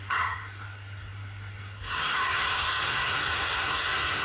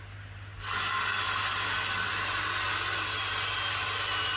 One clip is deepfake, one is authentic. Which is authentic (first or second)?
second